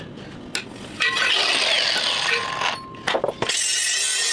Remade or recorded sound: recorded